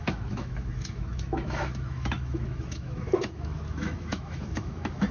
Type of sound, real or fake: fake